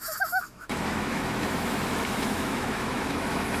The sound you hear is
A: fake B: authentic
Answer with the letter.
A